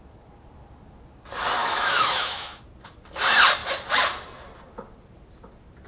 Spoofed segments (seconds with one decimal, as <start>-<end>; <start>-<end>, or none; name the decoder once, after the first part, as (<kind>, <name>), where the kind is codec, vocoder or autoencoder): 1.6-2.6 (autoencoder, DAC-VAE)